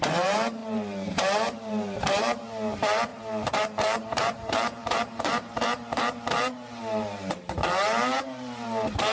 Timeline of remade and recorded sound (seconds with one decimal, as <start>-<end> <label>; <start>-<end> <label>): 0.0-9.1 remade